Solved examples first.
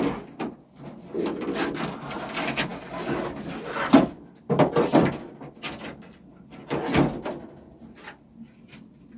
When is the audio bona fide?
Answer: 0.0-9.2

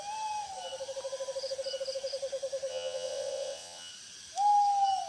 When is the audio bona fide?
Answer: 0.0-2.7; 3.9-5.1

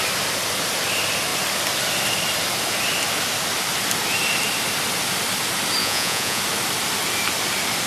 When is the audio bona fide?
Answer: 0.0-5.8; 6.4-7.9

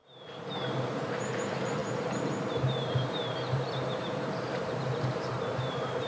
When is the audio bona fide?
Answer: 0.0-0.5

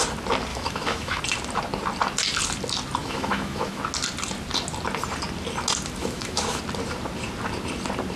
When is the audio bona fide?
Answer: 0.0-0.5; 1.2-3.0; 3.8-6.0; 6.6-8.2

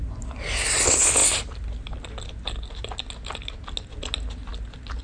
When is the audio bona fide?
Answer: 0.0-5.0

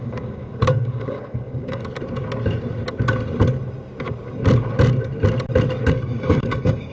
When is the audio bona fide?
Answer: 1.8-5.9

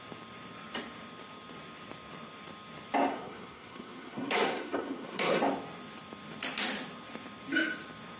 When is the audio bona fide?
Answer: 0.0-3.1; 5.4-8.2